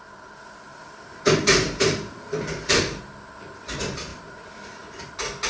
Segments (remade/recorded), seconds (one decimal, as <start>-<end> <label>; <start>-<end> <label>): 0.0-0.7 recorded; 0.7-3.0 remade; 3.0-5.5 recorded